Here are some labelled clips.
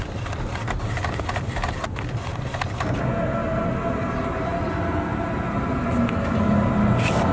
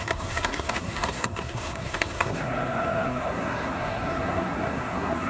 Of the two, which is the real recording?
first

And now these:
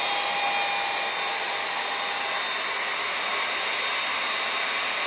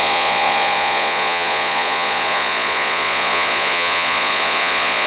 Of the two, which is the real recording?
first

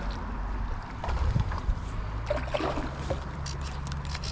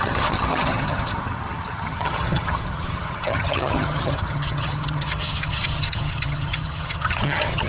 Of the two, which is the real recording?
first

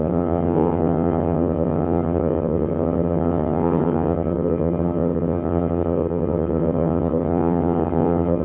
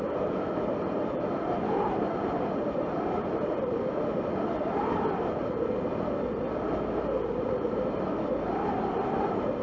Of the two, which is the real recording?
second